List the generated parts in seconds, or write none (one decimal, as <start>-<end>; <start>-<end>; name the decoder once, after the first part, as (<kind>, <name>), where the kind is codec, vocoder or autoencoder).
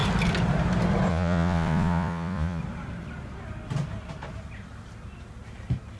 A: 1.1-2.6 (vocoder, Vocos)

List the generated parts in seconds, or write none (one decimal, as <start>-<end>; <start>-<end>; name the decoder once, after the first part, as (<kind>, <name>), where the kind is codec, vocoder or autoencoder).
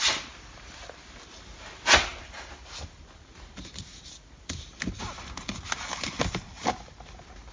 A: none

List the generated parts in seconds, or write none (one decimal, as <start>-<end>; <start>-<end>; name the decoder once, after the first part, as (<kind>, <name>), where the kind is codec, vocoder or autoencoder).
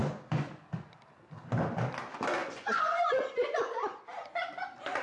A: 0.0-0.6 (vocoder, Vocos); 2.4-3.6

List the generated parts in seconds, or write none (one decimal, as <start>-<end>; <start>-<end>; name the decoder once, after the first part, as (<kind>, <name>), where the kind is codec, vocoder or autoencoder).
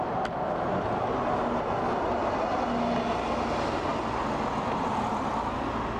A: none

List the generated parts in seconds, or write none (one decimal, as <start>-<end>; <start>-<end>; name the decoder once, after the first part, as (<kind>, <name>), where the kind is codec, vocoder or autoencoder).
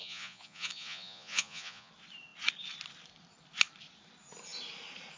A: 0.0-1.9 (vocoder, Vocos)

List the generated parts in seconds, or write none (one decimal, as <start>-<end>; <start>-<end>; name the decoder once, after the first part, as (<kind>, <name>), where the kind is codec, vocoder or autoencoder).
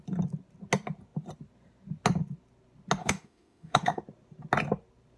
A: 3.0-4.0 (autoencoder, DAC-VAE)